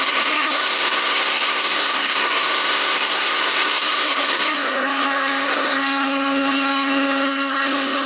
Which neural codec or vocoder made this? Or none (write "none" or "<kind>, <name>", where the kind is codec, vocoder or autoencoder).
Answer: codec, SNAC